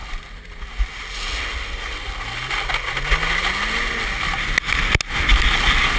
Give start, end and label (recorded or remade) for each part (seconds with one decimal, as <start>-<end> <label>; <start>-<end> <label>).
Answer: 0.0-6.0 recorded